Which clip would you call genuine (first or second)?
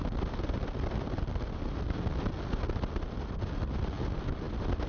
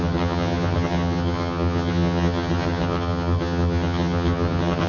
first